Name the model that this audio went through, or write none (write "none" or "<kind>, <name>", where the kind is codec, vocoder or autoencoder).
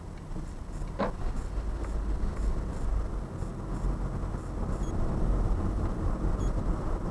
none